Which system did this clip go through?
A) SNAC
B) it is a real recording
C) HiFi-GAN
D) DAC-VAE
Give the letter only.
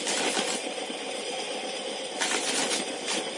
B